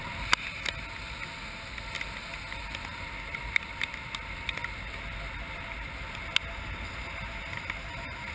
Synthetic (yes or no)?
no